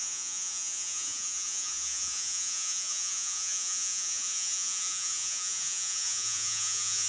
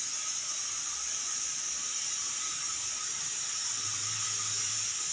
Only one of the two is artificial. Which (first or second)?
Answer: first